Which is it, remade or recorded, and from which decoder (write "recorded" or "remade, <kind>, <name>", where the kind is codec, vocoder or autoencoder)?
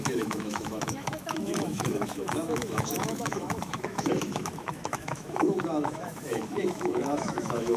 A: remade, autoencoder, DAC-VAE